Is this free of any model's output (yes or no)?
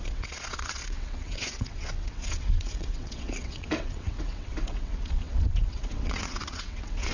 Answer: no